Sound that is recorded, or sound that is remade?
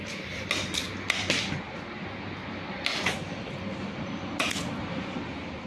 recorded